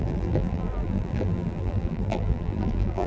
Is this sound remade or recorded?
remade